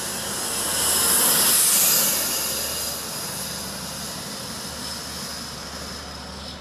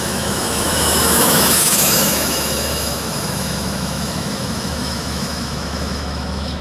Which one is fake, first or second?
second